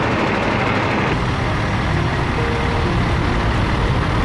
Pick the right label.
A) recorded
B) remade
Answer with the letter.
A